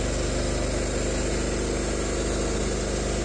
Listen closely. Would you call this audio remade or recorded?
recorded